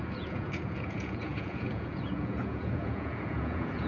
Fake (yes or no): yes